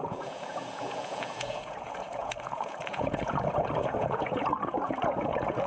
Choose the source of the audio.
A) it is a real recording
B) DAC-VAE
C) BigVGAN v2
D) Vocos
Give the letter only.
D